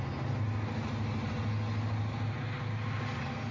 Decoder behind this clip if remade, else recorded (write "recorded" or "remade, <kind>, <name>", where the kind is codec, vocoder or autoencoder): recorded